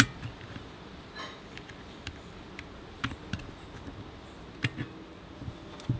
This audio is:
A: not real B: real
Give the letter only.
B